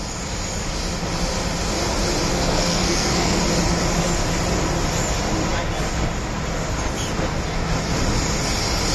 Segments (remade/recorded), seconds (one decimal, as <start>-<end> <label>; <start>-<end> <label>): 0.0-2.3 recorded; 2.3-3.4 remade; 3.4-8.9 recorded